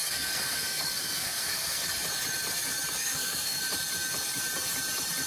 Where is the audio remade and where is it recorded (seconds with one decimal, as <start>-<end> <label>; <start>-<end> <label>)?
0.0-1.9 remade; 1.9-3.0 recorded; 3.0-3.6 remade; 3.6-5.3 recorded